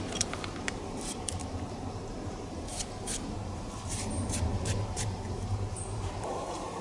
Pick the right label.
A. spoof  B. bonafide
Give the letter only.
A